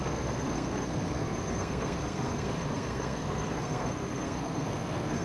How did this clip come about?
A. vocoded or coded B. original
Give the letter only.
A